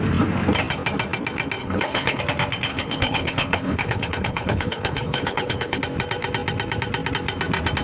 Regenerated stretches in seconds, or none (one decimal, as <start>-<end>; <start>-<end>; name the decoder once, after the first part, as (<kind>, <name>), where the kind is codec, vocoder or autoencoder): 1.6-2.2 (codec, HILCodec); 2.7-5.8